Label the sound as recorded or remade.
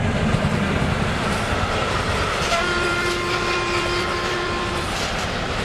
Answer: remade